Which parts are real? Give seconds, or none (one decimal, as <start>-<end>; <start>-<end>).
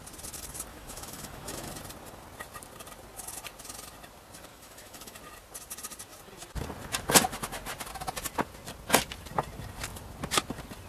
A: 0.0-0.7; 1.7-4.5; 5.2-10.9